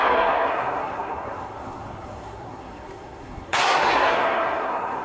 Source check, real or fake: fake